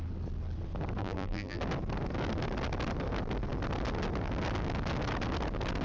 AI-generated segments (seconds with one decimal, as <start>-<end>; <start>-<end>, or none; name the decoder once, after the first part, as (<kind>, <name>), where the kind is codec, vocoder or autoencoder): 1.0-1.6 (vocoder, BigVGAN v2)